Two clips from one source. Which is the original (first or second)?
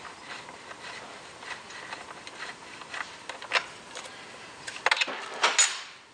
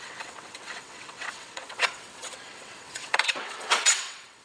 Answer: first